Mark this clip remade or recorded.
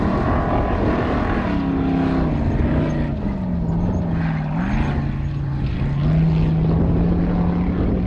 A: recorded